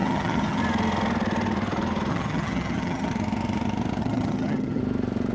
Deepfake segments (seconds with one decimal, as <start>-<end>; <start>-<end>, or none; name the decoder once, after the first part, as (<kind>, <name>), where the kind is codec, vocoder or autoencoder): 0.0-0.6 (vocoder, HiFi-GAN); 2.1-3.1; 4.0-4.8